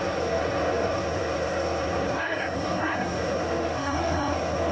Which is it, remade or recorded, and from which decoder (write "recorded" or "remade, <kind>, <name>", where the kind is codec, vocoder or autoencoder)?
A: remade, codec, SNAC